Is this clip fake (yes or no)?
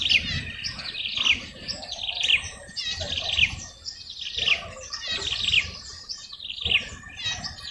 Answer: yes